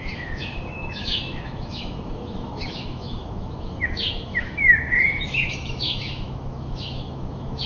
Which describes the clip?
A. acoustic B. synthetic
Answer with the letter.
B